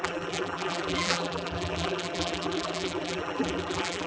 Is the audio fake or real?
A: fake